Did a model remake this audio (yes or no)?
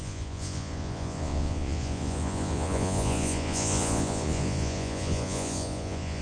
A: yes